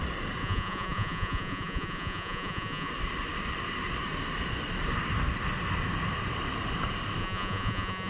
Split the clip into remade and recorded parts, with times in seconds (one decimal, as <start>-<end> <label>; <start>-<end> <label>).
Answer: 0.0-0.4 recorded; 0.4-2.9 remade; 2.9-7.2 recorded; 7.2-8.1 remade